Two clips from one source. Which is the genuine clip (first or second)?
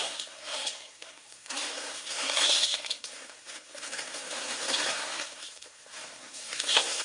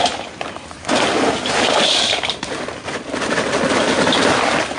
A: second